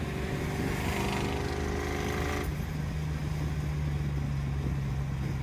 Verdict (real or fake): real